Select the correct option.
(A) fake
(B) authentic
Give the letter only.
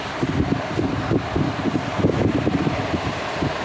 B